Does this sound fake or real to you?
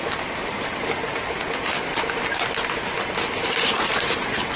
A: real